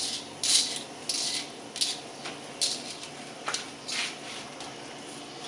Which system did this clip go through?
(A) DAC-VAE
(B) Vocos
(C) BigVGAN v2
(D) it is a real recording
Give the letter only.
D